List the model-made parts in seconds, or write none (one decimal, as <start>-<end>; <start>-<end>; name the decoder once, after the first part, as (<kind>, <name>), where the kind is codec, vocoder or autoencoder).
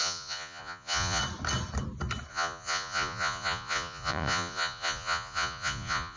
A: 0.0-1.2 (vocoder, Vocos); 2.3-6.2